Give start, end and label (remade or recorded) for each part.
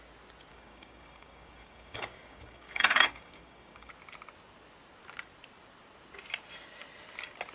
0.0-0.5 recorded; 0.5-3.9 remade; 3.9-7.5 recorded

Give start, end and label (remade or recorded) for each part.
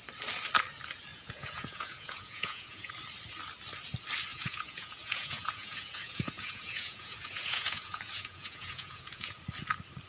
0.0-1.1 recorded; 1.1-2.9 remade; 2.9-4.3 recorded; 4.3-9.4 remade; 9.4-10.1 recorded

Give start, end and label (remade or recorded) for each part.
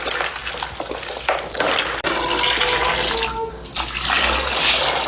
0.0-5.1 recorded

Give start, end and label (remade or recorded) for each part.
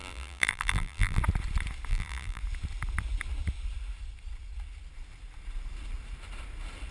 0.0-1.2 remade; 1.2-1.9 recorded; 1.9-2.4 remade; 2.4-6.9 recorded